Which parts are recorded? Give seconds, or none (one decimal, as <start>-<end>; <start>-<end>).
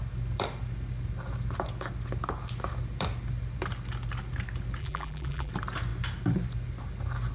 0.0-4.8; 5.5-7.3